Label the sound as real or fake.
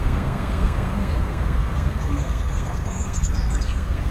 fake